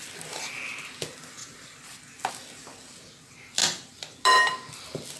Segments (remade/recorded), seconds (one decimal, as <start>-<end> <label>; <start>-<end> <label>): 0.0-1.4 recorded; 1.4-2.3 remade; 2.3-5.2 recorded